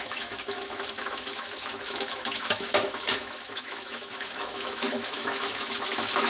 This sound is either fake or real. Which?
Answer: fake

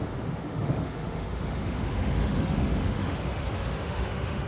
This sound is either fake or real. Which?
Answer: fake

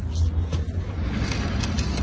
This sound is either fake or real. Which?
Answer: real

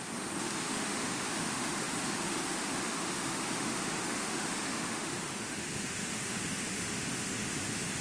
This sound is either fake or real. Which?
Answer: fake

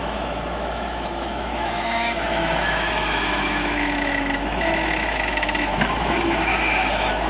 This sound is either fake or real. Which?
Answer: fake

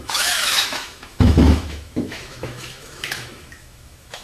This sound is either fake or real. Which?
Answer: fake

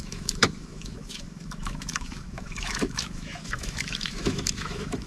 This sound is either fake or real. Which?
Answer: fake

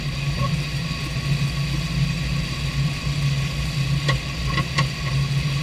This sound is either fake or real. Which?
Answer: real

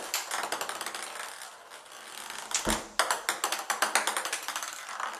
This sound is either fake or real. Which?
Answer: real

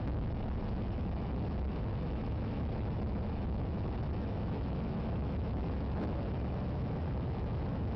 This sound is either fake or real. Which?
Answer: fake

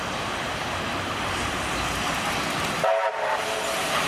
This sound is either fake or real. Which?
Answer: real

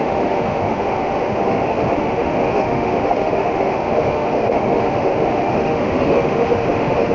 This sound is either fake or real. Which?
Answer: fake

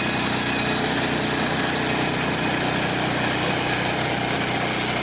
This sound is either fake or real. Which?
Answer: real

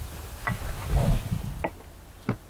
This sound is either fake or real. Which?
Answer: real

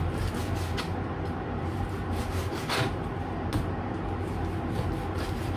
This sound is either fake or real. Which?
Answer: real